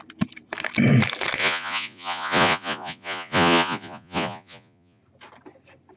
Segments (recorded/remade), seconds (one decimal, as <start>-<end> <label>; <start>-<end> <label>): 0.0-1.4 recorded; 1.4-5.0 remade; 5.0-6.0 recorded